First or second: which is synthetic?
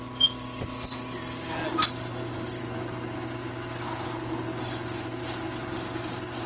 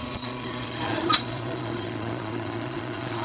second